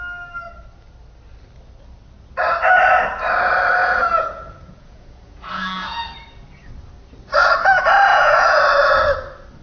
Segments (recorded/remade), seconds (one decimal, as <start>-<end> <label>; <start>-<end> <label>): 0.0-3.8 recorded; 3.8-6.0 remade; 6.0-8.1 recorded; 8.1-8.6 remade; 8.6-9.6 recorded